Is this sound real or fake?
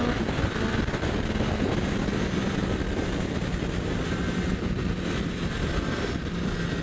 real